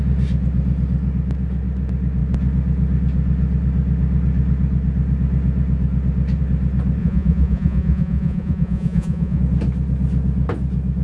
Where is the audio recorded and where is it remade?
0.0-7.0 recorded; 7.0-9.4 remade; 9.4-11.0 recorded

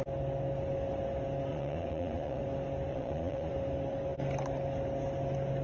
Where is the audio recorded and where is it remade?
0.0-1.5 recorded; 1.5-2.4 remade; 2.4-2.9 recorded; 2.9-3.5 remade; 3.5-5.6 recorded

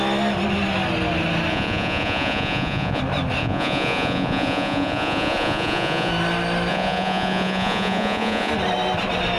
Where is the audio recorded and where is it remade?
0.0-1.5 recorded; 1.5-3.0 remade; 3.0-3.4 recorded; 3.4-6.1 remade; 6.1-6.7 recorded; 6.7-8.5 remade; 8.5-9.4 recorded

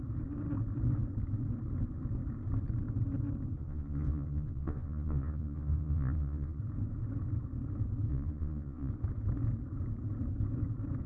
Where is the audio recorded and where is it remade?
0.0-3.6 recorded; 3.6-6.6 remade; 6.6-8.1 recorded; 8.1-8.9 remade; 8.9-11.1 recorded

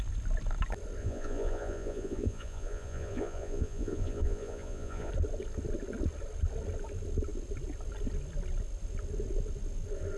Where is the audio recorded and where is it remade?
0.0-1.0 recorded; 1.0-5.1 remade; 5.1-10.2 recorded

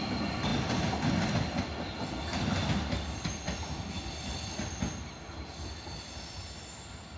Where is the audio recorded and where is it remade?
0.0-7.2 recorded